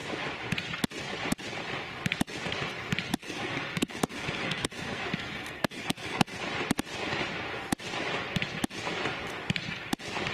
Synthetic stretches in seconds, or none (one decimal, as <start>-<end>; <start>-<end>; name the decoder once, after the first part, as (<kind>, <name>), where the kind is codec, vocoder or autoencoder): 3.2-6.4 (codec, SNAC)

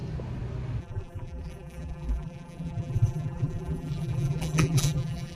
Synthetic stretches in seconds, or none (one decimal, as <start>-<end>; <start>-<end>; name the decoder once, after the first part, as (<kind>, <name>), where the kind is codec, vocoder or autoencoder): 0.8-5.4 (vocoder, BigVGAN v2)